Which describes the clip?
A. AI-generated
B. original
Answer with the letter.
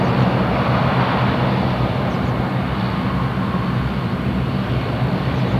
B